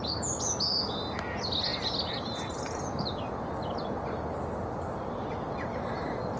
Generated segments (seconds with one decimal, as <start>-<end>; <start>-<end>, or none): none